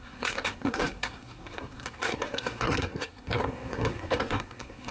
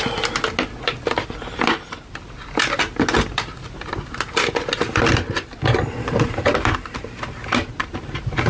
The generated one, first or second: first